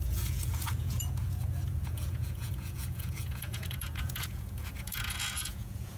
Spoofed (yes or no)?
yes